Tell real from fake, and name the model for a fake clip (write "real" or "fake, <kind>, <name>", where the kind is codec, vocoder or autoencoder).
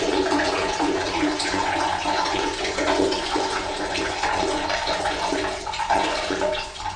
fake, vocoder, Vocos